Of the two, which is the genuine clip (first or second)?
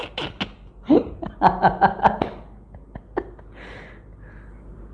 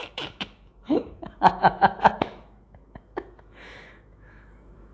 first